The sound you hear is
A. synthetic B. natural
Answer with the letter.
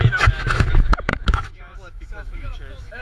A